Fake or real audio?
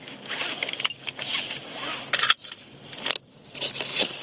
real